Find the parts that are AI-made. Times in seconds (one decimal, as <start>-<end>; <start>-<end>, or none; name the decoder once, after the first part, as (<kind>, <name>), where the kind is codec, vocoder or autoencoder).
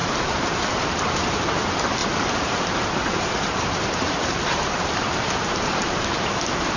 0.0-1.4 (vocoder, BigVGAN v2); 2.0-6.0